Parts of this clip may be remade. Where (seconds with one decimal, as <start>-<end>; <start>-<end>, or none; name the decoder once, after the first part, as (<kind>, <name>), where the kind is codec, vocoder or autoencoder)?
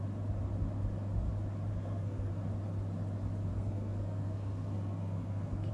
1.7-2.3 (codec, SNAC); 3.5-5.7